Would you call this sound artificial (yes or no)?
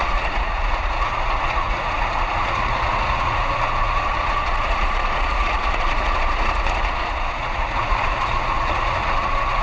yes